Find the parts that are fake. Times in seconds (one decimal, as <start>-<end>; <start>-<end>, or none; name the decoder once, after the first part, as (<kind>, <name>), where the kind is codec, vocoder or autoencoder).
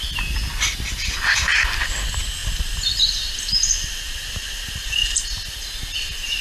none